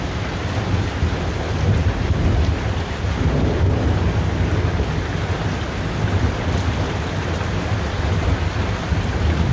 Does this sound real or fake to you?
real